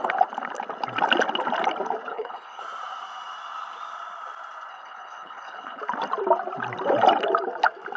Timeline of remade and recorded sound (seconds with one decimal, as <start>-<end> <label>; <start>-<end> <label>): 0.0-2.1 recorded; 2.1-2.6 remade; 2.6-4.7 recorded; 4.7-5.8 remade; 5.8-8.0 recorded